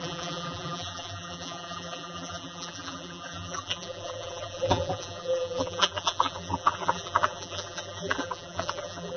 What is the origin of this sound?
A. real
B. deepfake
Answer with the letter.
B